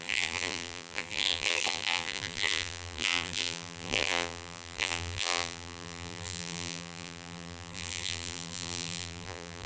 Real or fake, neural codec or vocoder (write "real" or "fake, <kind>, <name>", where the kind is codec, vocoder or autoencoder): fake, vocoder, BigVGAN v2